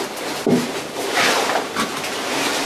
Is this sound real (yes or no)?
yes